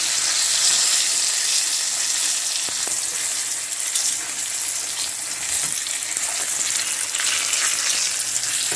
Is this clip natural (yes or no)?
yes